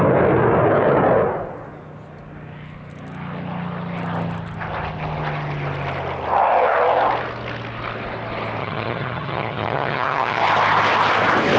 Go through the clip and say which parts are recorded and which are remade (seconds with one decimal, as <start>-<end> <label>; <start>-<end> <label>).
0.0-8.6 recorded; 8.6-10.4 remade; 10.4-11.6 recorded